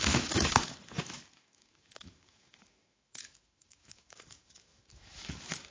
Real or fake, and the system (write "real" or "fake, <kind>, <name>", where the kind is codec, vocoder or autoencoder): fake, autoencoder, DAC-VAE